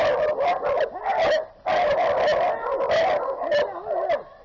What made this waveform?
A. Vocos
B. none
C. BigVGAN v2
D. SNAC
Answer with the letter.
B